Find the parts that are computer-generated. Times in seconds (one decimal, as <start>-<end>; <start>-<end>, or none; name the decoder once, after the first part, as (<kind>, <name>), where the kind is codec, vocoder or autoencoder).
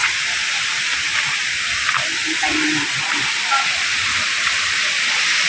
none